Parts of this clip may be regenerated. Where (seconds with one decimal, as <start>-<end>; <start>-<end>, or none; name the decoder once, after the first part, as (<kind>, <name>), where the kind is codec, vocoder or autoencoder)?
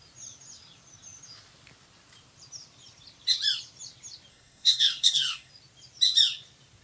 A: 4.3-5.5 (codec, SNAC)